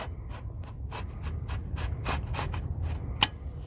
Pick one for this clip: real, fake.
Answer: real